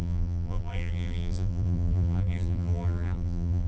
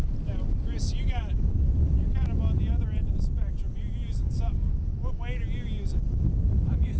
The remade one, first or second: first